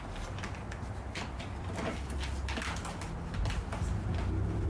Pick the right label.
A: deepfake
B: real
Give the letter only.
B